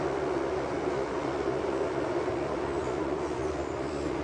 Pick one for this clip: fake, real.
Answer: fake